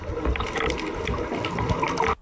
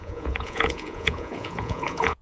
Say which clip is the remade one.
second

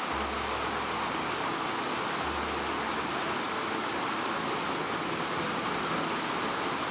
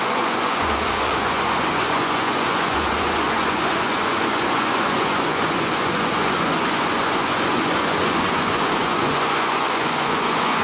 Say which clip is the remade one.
second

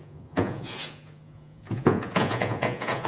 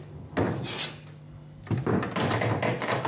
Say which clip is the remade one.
first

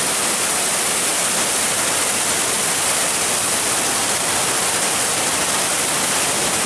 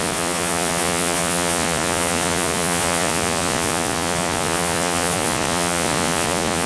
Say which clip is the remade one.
second